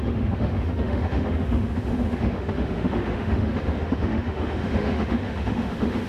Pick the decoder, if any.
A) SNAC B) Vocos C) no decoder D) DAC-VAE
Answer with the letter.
D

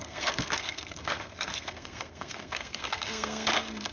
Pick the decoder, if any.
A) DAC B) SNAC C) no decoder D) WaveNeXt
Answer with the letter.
B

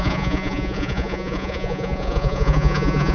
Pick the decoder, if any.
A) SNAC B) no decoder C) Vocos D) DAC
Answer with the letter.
C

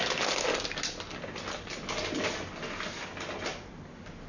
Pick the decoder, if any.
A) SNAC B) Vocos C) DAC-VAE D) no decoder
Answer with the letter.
D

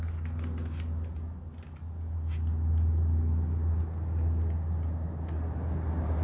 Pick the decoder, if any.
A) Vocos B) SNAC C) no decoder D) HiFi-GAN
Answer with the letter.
C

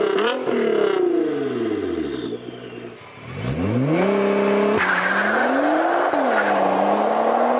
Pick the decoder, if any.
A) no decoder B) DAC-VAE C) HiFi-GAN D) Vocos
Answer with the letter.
A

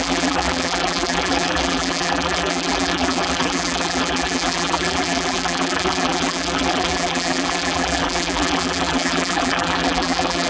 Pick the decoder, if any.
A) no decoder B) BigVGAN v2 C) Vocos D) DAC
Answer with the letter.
B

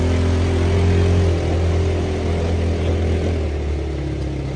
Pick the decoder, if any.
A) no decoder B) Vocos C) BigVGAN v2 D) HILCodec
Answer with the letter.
A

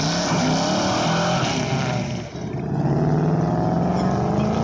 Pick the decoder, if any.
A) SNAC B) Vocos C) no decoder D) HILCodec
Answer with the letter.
C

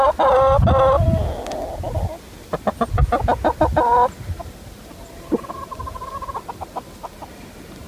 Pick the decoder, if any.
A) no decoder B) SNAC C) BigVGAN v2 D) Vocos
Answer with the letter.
A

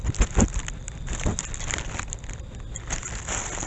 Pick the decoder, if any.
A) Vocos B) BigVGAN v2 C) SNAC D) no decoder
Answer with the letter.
D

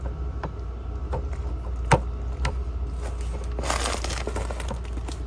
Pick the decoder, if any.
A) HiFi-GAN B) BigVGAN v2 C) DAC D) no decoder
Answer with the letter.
D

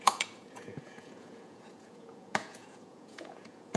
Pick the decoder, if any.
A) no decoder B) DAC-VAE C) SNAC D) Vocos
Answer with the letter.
D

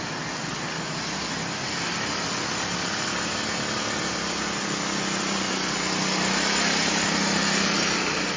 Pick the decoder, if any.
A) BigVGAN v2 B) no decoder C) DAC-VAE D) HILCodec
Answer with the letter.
B